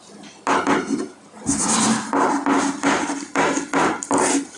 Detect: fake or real real